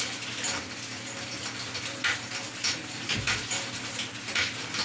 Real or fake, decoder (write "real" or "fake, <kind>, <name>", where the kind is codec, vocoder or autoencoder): real